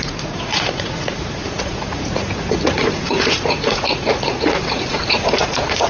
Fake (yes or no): yes